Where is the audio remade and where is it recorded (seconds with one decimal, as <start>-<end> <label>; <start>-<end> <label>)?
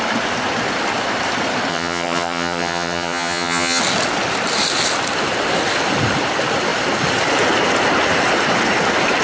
0.0-1.7 recorded; 1.7-3.8 remade; 3.8-9.2 recorded